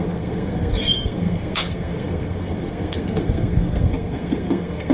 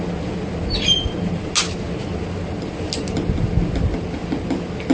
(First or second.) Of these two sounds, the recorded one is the second